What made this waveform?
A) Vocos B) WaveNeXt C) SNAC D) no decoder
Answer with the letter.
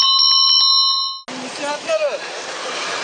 D